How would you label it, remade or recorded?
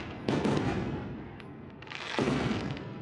remade